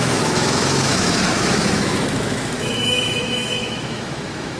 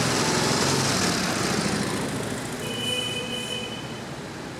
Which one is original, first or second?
second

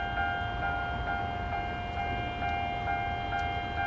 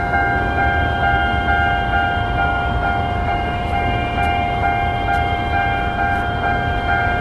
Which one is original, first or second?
first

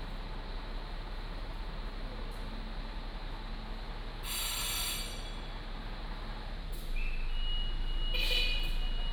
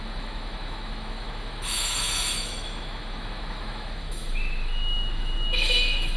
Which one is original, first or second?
first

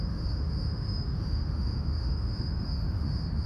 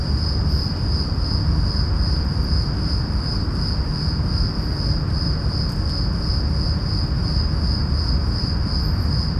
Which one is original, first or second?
second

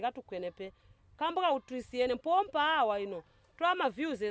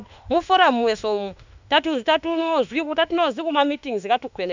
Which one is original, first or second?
first